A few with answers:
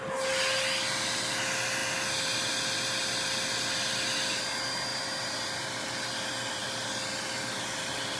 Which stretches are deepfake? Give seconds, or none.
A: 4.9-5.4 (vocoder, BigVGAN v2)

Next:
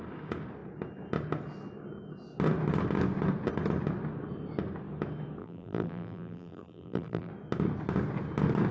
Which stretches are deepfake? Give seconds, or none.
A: 5.4-7.3 (vocoder, BigVGAN v2)

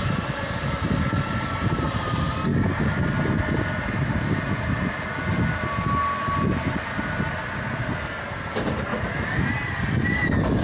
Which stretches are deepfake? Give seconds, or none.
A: none

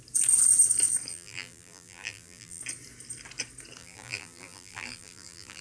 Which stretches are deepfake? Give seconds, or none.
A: 1.1-2.6 (vocoder, BigVGAN v2); 3.8-5.6

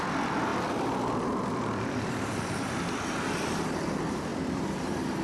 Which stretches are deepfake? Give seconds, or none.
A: 0.5-3.3 (vocoder, BigVGAN v2); 4.3-4.8